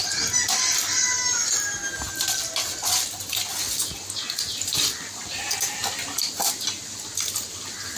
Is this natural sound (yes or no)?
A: yes